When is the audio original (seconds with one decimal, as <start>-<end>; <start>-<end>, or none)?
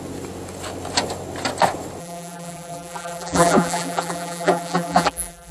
0.0-2.0